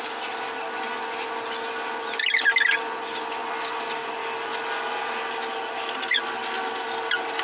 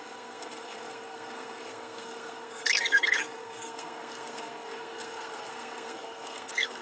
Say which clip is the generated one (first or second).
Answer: second